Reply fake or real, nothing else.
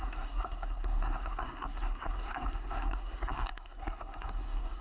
fake